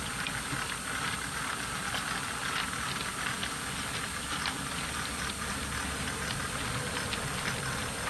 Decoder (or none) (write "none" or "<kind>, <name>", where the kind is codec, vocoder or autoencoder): none